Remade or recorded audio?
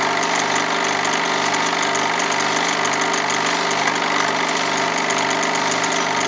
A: recorded